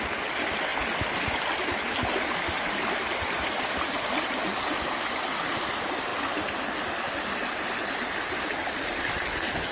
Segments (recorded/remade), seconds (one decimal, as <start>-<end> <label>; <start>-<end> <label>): 0.0-9.7 recorded